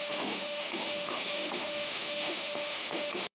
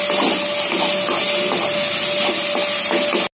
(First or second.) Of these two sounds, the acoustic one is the second